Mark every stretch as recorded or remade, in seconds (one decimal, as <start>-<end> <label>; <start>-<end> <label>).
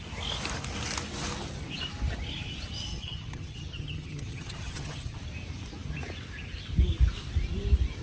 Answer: 0.0-2.9 recorded; 2.9-5.2 remade; 5.2-8.0 recorded